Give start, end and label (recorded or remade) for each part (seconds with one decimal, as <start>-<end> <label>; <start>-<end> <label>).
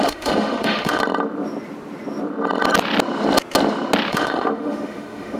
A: 0.0-1.0 remade; 1.0-4.1 recorded; 4.1-5.4 remade